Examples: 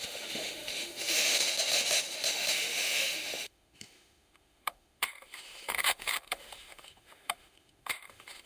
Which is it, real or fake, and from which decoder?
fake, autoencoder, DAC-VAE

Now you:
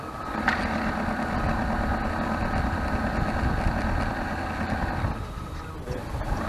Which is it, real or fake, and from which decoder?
real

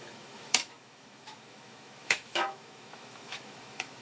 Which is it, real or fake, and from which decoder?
fake, autoencoder, DAC-VAE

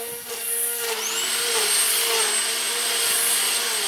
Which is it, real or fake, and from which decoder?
real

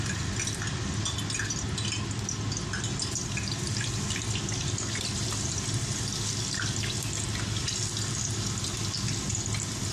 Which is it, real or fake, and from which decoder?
real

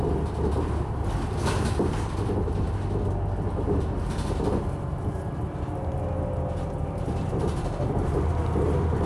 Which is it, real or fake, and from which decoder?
real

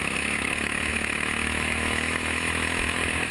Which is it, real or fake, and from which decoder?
fake, autoencoder, DAC-VAE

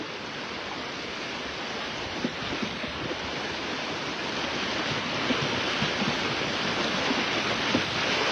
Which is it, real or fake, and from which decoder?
real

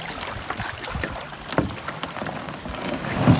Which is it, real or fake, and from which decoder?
real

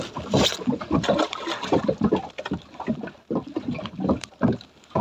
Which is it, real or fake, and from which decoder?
real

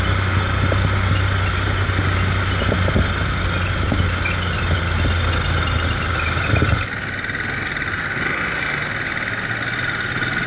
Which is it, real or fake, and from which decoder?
real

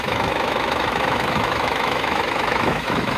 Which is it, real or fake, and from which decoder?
fake, autoencoder, DAC-VAE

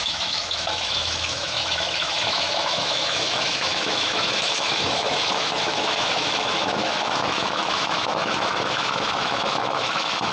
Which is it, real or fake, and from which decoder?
fake, autoencoder, DAC-VAE